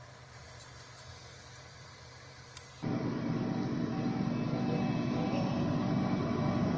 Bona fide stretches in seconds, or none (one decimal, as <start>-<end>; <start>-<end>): none